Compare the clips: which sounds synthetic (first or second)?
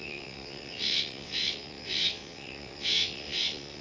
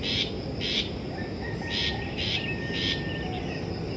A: first